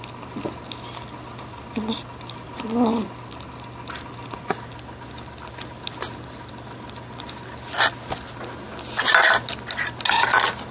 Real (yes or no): yes